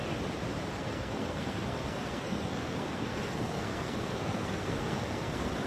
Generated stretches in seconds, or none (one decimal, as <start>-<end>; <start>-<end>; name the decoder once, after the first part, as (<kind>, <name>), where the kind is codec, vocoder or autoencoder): 0.7-5.7 (codec, SNAC)